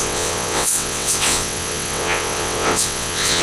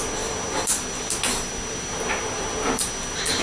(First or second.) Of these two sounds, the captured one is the second